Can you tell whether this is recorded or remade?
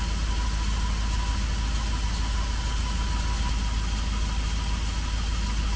recorded